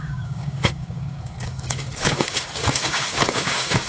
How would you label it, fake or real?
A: fake